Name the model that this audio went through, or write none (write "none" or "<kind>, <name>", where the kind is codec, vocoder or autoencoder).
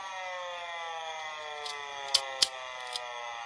none